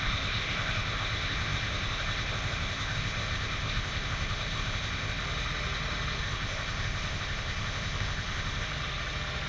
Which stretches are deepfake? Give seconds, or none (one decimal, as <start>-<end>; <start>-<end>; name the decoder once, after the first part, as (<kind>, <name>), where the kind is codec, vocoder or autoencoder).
0.0-5.2 (codec, ZipCodec); 6.2-8.7